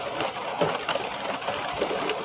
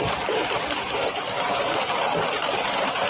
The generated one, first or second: first